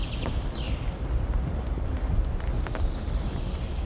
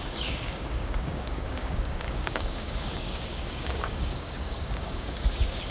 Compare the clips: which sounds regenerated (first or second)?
second